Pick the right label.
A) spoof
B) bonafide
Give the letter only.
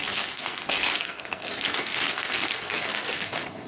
A